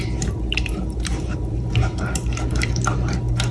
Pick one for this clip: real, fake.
fake